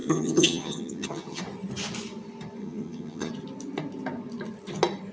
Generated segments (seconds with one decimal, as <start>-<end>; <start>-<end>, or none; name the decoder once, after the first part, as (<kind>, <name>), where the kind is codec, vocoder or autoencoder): 0.0-1.4 (vocoder, HiFi-GAN); 2.6-3.3